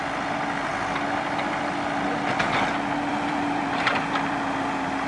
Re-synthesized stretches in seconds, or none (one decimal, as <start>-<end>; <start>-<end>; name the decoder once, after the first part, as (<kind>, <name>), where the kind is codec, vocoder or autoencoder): 3.1-5.1 (vocoder, BigVGAN v2)